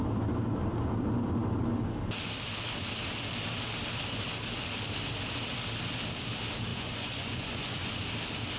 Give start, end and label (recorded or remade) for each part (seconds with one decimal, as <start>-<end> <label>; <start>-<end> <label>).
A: 0.0-6.7 recorded; 6.7-7.9 remade; 7.9-8.6 recorded